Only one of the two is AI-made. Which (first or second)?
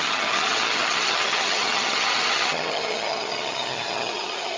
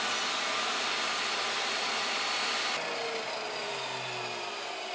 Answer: first